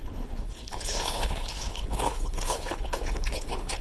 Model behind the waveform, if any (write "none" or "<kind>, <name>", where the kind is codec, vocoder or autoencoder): codec, HILCodec